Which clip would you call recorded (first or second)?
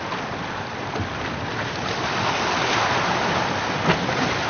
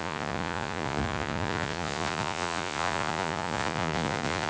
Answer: first